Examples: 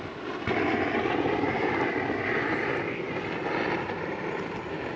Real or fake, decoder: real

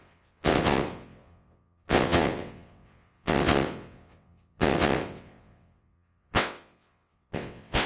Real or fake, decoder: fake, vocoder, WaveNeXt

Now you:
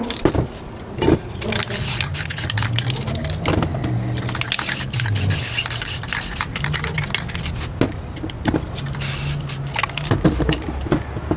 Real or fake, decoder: real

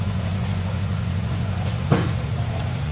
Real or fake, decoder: fake, vocoder, Vocos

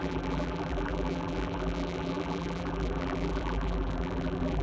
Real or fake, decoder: fake, vocoder, BigVGAN v2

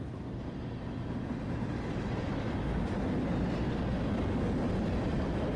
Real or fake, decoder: real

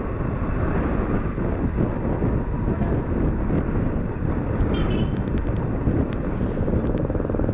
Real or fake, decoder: real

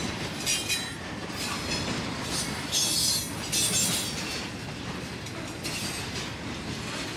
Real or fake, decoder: real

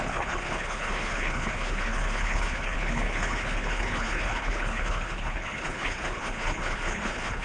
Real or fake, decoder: fake, codec, HILCodec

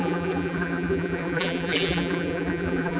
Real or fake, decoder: fake, vocoder, BigVGAN v2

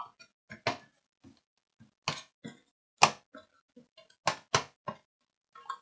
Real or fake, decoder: real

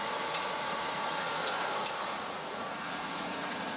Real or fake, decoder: fake, vocoder, Vocos